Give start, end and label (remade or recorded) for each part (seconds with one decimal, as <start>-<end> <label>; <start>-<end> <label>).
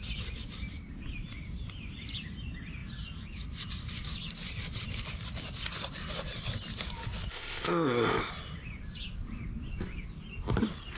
0.0-7.3 recorded; 7.3-8.3 remade; 8.3-11.0 recorded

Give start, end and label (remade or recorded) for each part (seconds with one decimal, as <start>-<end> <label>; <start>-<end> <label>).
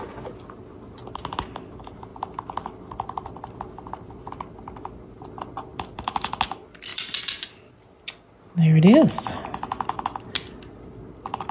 0.0-2.1 recorded; 2.1-4.3 remade; 4.3-5.7 recorded; 5.7-6.3 remade; 6.3-6.9 recorded; 6.9-7.7 remade; 7.7-11.5 recorded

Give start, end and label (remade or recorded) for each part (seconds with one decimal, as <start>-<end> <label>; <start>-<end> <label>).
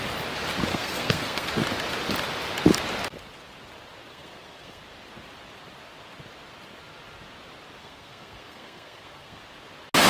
0.0-0.7 recorded; 0.7-1.5 remade; 1.5-4.1 recorded; 4.1-4.8 remade; 4.8-7.8 recorded; 7.8-9.4 remade; 9.4-10.1 recorded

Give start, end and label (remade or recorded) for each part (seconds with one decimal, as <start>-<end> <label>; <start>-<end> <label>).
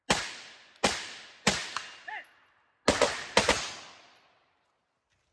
0.0-5.3 recorded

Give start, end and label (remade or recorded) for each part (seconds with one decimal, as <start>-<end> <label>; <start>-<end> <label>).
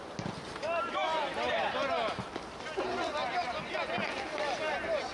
0.0-0.6 recorded; 0.6-3.7 remade; 3.7-5.1 recorded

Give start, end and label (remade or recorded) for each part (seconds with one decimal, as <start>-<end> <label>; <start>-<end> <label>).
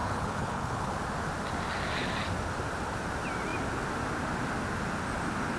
0.0-0.9 remade; 0.9-5.6 recorded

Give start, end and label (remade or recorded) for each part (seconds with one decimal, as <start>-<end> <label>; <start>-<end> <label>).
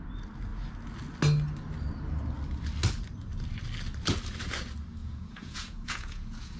0.0-5.0 recorded; 5.0-6.6 remade